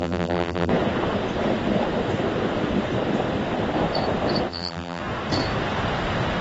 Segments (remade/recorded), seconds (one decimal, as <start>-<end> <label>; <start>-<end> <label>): 0.0-0.7 remade; 0.7-4.5 recorded; 4.5-5.0 remade; 5.0-6.4 recorded